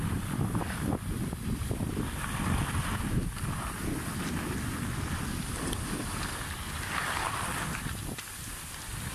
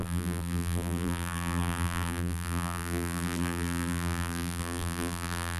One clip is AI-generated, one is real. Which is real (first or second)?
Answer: first